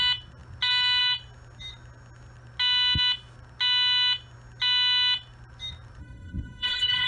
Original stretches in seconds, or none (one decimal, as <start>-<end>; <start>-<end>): 0.0-6.0